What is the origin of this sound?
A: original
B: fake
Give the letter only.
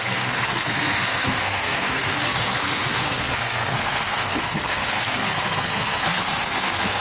B